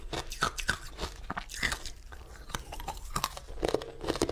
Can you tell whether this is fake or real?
real